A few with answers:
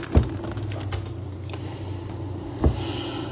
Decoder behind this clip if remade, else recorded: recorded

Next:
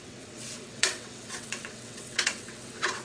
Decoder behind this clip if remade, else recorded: remade, vocoder, WaveNeXt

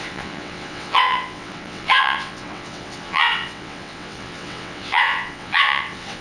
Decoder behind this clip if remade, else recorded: remade, vocoder, WaveNeXt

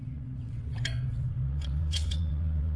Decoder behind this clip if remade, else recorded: remade, vocoder, WaveNeXt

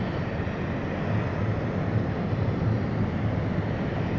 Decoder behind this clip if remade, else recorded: recorded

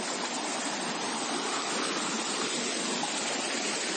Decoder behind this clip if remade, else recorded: recorded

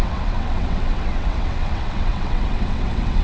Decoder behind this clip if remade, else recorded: remade, vocoder, WaveNeXt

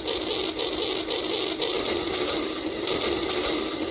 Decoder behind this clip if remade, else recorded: recorded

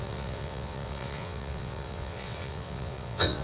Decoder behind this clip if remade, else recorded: remade, vocoder, WaveNeXt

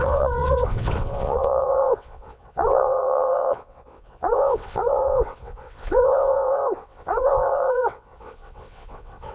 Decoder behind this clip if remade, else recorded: remade, vocoder, WaveNeXt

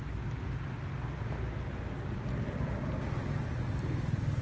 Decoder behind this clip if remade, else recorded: recorded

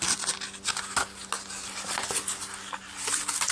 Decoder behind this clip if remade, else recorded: recorded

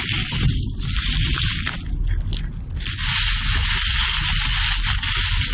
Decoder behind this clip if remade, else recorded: recorded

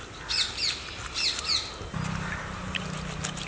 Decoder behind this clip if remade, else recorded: recorded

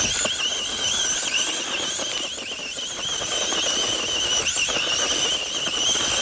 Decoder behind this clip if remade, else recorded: recorded